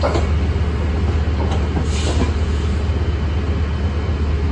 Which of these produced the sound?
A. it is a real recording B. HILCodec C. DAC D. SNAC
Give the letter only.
A